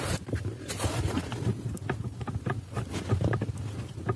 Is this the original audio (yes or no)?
yes